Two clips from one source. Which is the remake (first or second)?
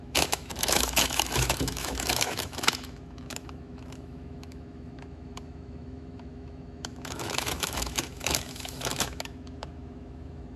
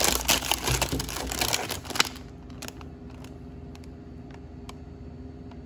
first